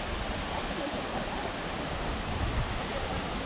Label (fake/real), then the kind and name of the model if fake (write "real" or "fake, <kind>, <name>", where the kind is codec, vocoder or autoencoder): real